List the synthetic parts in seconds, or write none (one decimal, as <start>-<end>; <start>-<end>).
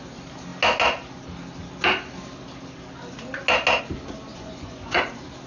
4.3-5.0